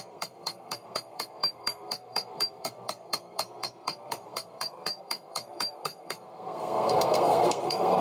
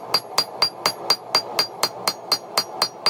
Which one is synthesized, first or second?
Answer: first